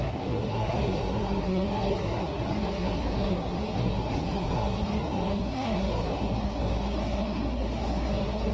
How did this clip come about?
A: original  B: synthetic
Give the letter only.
B